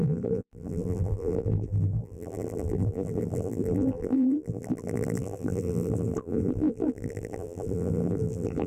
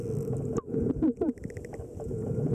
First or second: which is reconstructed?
first